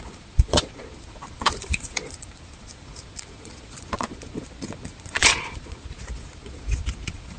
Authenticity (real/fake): fake